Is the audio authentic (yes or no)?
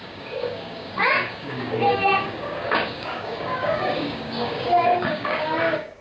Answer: no